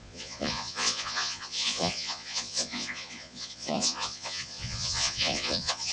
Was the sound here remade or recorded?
remade